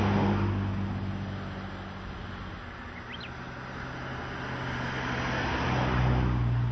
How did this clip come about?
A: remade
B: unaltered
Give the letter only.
B